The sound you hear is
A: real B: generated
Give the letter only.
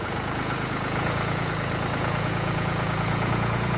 B